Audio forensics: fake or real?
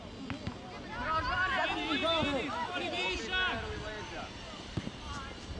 real